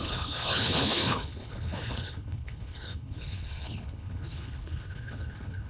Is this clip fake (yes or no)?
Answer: yes